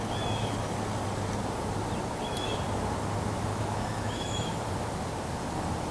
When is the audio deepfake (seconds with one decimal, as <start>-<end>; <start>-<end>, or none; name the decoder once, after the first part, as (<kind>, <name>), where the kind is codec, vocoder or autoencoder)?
3.5-4.5 (autoencoder, DAC-VAE)

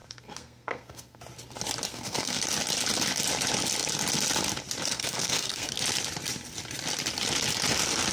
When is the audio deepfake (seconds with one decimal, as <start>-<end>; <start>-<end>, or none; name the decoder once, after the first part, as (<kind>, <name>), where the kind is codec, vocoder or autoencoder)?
0.0-1.2 (codec, SNAC); 1.9-2.4; 4.9-5.7

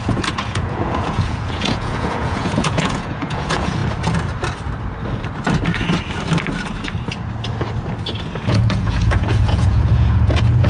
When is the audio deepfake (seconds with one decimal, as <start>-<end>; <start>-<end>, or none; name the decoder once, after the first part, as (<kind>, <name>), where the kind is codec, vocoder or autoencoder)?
0.0-3.8 (vocoder, Vocos); 8.5-10.7